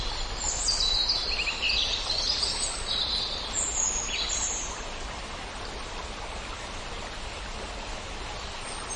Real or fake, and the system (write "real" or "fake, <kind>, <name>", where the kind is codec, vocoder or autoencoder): real